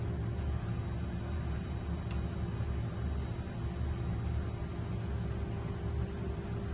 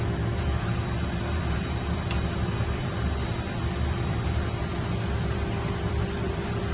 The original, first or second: first